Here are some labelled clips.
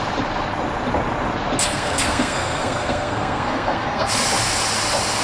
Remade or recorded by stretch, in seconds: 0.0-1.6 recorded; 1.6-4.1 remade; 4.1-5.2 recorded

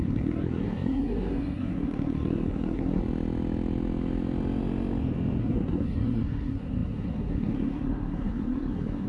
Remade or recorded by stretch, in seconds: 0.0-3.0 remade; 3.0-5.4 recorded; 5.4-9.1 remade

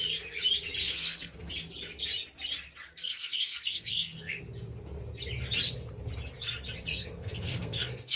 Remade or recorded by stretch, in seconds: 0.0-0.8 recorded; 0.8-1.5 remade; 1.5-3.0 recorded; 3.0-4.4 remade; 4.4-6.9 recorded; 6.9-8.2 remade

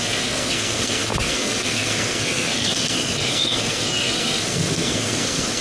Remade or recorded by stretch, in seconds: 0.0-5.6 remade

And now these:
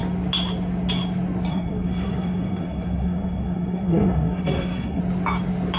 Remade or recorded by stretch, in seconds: 0.0-1.5 recorded; 1.5-5.0 remade; 5.0-5.8 recorded